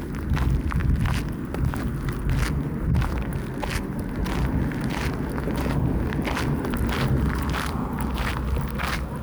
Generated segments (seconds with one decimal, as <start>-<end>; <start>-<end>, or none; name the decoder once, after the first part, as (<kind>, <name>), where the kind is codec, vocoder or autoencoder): none